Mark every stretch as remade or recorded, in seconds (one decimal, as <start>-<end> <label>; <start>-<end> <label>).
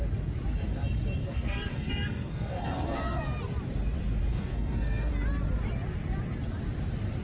0.0-1.2 recorded; 1.2-3.2 remade; 3.2-4.2 recorded; 4.2-5.1 remade; 5.1-7.2 recorded